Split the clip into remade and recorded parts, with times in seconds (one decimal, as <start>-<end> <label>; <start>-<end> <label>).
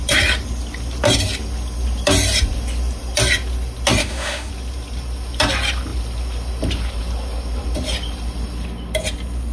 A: 0.0-4.0 recorded; 4.0-4.5 remade; 4.5-9.5 recorded